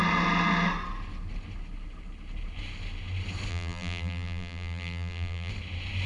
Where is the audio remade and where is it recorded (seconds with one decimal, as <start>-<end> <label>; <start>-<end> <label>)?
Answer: 0.0-3.5 recorded; 3.5-5.5 remade; 5.5-6.1 recorded